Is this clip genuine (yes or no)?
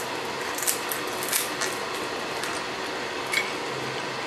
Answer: yes